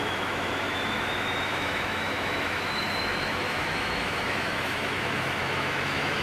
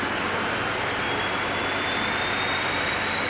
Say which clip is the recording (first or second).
second